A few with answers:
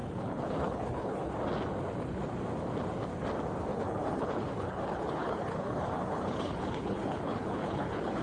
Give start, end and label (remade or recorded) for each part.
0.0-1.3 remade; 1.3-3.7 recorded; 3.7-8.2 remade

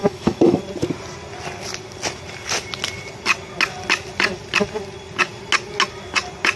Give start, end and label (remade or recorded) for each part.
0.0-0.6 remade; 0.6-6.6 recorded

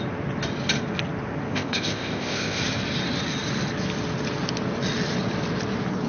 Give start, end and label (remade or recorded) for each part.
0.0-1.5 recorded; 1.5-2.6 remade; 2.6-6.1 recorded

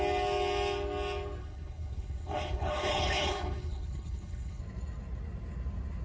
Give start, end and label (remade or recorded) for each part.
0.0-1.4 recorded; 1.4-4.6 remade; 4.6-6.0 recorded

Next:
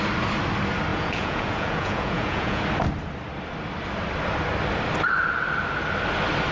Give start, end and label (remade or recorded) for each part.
0.0-0.9 recorded; 0.9-2.6 remade; 2.6-6.5 recorded

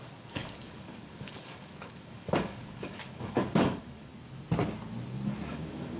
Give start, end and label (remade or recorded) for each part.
0.0-4.1 remade; 4.1-5.5 recorded; 5.5-6.0 remade

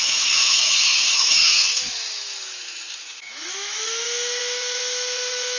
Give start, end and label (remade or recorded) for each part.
0.0-5.6 remade